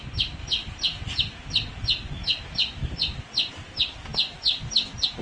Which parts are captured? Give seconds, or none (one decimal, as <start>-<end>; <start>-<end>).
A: 0.0-5.2